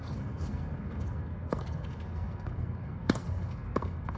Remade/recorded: remade